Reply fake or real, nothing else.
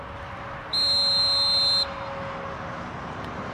real